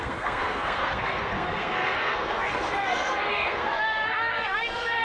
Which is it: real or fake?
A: fake